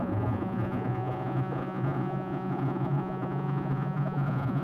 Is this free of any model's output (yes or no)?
no